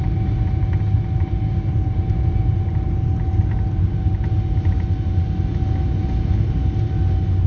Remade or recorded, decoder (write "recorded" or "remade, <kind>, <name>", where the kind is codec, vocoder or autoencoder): recorded